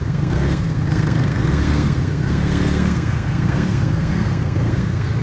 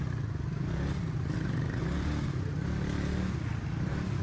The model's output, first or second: first